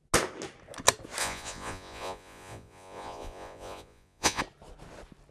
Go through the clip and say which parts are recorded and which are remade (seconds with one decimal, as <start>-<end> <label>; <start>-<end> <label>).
0.0-1.2 recorded; 1.2-4.4 remade; 4.4-5.3 recorded